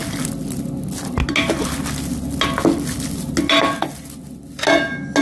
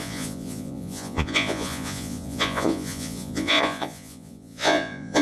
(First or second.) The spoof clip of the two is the second